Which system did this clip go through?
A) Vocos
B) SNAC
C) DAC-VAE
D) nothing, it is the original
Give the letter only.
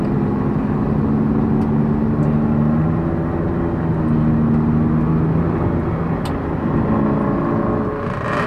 D